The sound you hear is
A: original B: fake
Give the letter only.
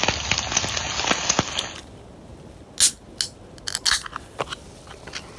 A